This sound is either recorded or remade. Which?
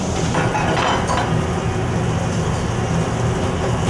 recorded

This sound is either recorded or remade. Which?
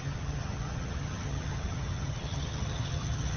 remade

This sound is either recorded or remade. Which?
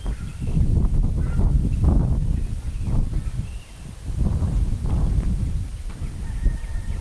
recorded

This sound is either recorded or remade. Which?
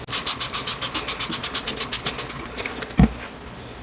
recorded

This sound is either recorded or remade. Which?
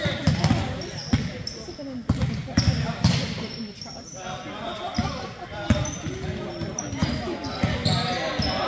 recorded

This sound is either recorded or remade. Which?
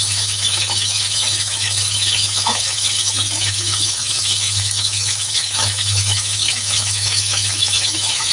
remade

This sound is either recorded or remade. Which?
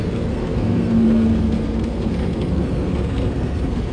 remade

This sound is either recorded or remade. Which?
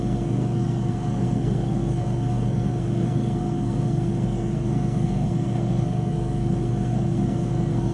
remade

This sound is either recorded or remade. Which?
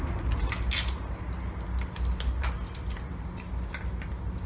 recorded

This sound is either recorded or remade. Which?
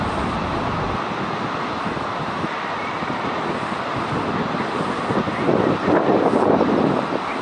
recorded